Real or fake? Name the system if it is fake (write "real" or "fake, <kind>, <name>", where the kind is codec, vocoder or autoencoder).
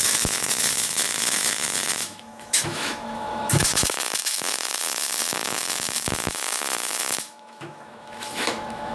fake, autoencoder, DAC-VAE